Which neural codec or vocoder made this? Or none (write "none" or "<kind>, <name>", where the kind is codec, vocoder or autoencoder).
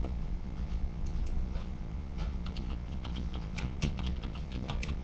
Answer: vocoder, Vocos